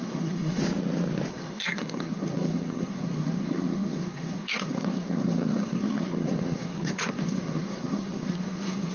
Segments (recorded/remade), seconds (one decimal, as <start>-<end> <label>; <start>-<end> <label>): 0.0-0.6 remade; 0.6-1.3 recorded; 1.3-8.9 remade